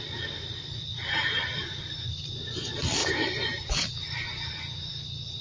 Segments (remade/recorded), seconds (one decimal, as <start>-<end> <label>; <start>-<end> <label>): 0.0-5.4 recorded